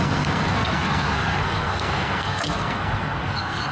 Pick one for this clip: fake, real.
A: fake